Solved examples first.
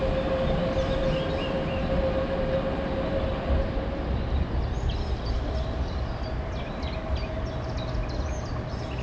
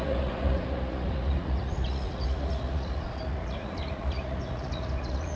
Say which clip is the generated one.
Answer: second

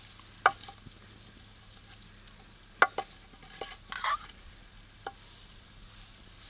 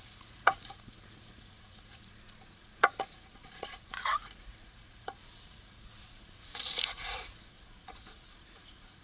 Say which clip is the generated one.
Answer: second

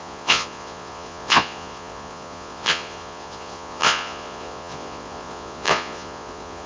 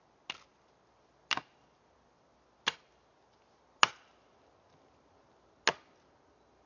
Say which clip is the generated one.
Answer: first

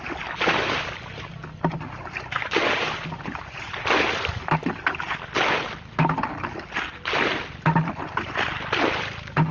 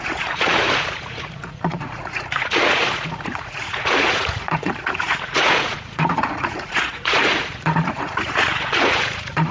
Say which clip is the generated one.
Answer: second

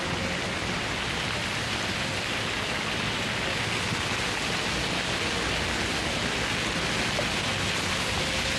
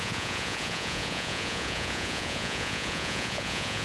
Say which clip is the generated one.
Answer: second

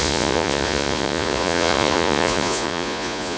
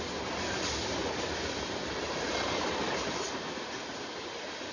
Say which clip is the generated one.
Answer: first